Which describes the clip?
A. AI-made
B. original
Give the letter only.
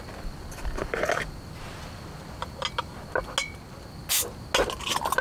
B